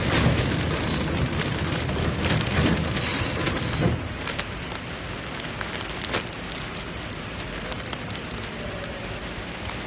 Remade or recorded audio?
recorded